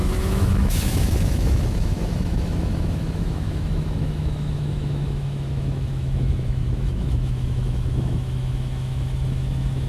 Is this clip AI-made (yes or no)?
yes